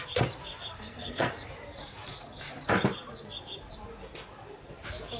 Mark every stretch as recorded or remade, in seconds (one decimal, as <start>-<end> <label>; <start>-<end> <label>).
0.0-0.7 recorded; 0.7-1.3 remade; 1.3-5.2 recorded